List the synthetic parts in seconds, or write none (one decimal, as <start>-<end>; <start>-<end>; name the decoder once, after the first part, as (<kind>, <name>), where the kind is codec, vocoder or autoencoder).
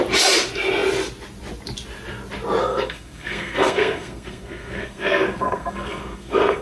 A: 2.6-6.6 (codec, SNAC)